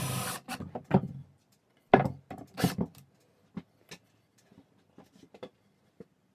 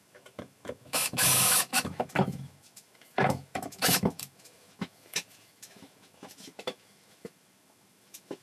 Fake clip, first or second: second